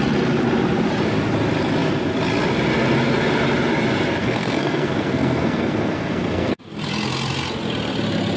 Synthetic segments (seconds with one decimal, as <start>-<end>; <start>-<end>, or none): 4.2-6.6